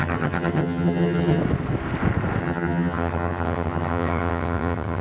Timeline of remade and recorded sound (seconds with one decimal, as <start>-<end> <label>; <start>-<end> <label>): 0.0-1.4 remade; 1.4-2.4 recorded; 2.4-5.0 remade